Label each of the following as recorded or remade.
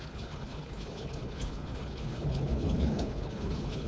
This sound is remade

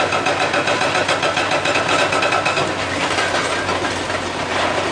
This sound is recorded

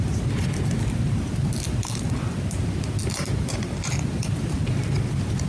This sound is recorded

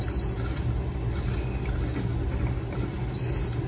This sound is recorded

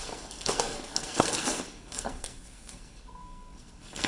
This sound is remade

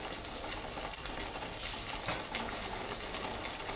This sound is recorded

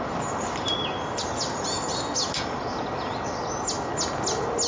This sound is recorded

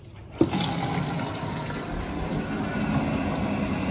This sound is recorded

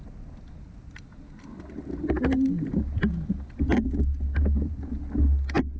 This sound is recorded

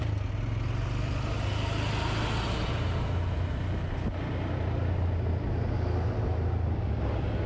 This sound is recorded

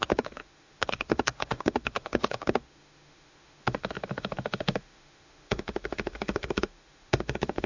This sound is remade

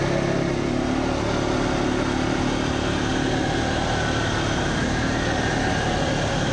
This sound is recorded